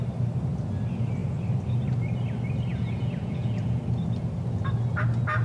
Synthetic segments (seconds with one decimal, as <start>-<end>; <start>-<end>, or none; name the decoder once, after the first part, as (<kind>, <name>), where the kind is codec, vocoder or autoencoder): 2.7-3.8 (vocoder, Vocos)